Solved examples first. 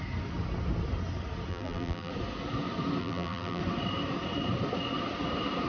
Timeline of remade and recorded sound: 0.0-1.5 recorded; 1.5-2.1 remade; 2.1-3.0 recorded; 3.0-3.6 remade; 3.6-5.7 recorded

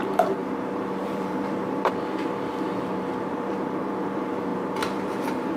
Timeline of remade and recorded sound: 0.0-5.6 remade

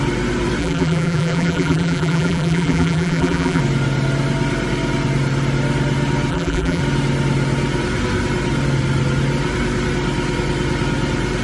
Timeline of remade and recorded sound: 0.0-0.6 recorded; 0.6-3.6 remade; 3.6-6.3 recorded; 6.3-6.8 remade; 6.8-11.4 recorded

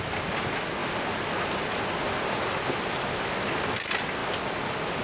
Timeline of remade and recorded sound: 0.0-5.0 recorded

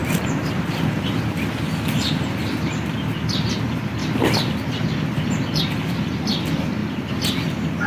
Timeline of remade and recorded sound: 0.0-2.7 remade; 2.7-4.0 recorded; 4.0-5.6 remade; 5.6-7.9 recorded